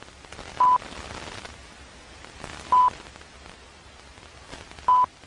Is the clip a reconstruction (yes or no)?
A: no